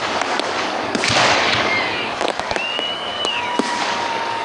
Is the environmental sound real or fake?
fake